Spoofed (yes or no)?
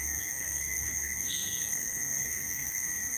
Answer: yes